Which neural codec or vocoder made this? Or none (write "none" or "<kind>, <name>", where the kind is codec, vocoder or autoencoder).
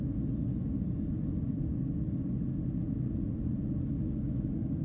none